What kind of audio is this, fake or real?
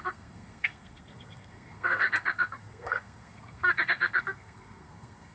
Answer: fake